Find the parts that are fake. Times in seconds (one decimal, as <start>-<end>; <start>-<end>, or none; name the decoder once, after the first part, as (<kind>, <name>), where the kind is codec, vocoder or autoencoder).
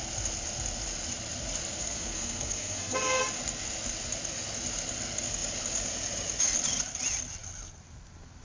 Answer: 1.8-3.2 (codec, SNAC)